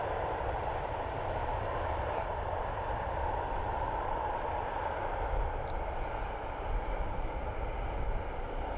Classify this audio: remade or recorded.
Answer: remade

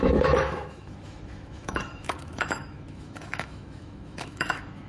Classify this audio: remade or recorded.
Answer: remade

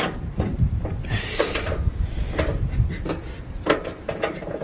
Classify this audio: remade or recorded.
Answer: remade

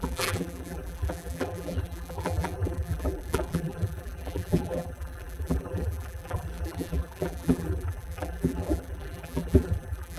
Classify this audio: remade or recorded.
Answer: remade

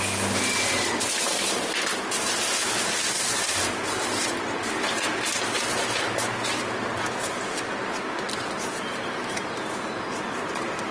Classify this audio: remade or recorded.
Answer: recorded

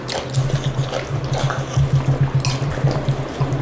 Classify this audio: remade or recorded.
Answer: recorded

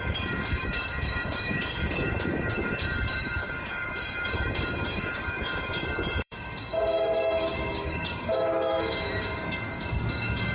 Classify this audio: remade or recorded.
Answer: remade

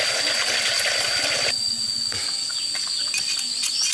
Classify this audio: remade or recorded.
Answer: recorded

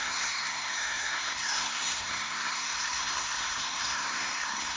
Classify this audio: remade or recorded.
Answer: remade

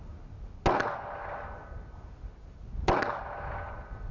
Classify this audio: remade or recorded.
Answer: recorded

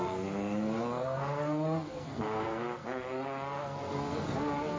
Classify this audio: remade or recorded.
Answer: remade